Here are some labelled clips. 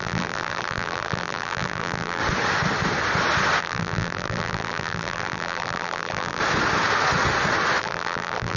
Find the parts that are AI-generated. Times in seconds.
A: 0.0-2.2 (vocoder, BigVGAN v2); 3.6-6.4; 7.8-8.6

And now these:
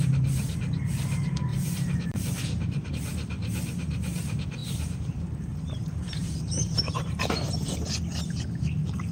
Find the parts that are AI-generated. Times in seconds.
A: 1.5-2.9 (vocoder, BigVGAN v2); 4.6-7.9